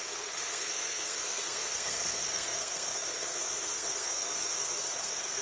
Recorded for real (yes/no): no